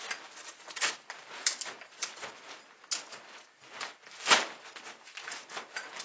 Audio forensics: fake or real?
real